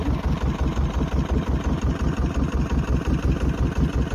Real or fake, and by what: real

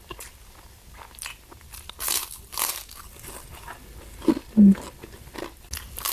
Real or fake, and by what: real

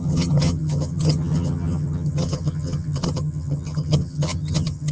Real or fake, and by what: fake, vocoder, HiFi-GAN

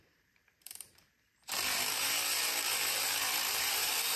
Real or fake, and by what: fake, vocoder, BigVGAN v2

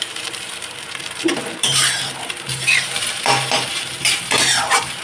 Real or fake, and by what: fake, vocoder, BigVGAN v2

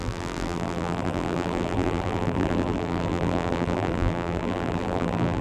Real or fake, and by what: fake, vocoder, BigVGAN v2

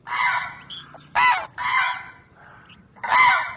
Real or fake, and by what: real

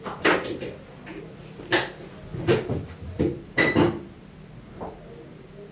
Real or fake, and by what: real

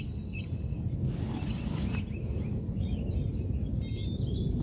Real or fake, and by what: real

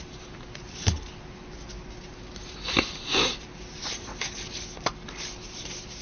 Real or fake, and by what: real